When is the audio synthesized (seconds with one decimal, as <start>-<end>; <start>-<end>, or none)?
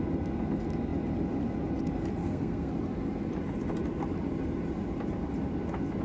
2.2-2.7